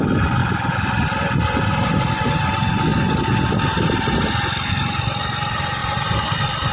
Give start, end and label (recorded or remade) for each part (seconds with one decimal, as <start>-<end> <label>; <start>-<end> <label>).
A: 0.0-0.4 recorded; 0.4-2.1 remade; 2.1-5.8 recorded; 5.8-6.7 remade